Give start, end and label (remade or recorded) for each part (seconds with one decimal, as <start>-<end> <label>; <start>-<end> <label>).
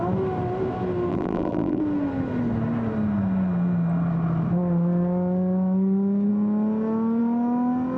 0.0-1.1 recorded; 1.1-1.8 remade; 1.8-8.0 recorded